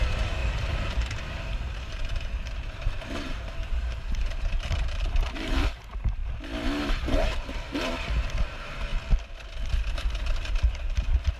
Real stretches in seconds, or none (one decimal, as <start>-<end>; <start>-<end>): 6.2-6.8; 8.9-9.9

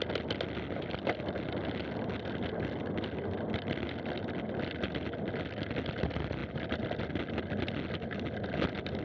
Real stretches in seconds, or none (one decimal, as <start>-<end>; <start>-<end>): 0.0-9.0